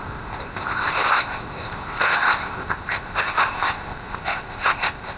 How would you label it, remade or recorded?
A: remade